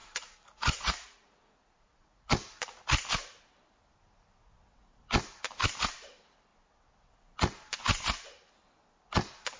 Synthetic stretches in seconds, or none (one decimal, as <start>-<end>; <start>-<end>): 0.0-2.3

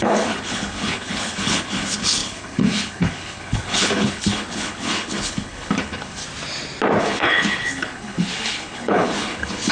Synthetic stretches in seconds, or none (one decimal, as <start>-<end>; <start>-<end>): 0.0-6.2; 7.0-9.7

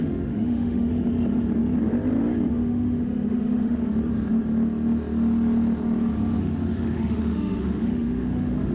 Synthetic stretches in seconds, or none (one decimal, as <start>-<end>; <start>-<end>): 0.0-0.9; 2.5-3.8; 6.4-8.7

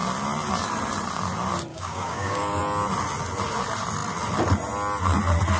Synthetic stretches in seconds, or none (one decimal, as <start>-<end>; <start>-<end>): 1.7-2.6